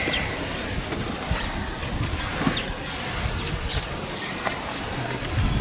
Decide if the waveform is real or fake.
real